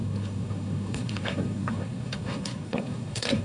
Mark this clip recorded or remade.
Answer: remade